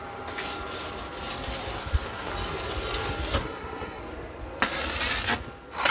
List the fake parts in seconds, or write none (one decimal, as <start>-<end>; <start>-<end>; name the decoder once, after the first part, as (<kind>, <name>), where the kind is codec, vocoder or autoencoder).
1.8-2.3 (codec, SNAC); 3.4-4.0